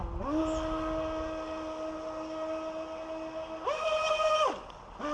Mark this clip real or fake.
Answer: real